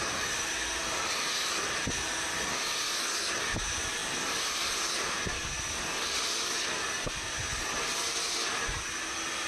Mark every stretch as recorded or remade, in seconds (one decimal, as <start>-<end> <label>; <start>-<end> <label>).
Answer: 0.0-9.5 recorded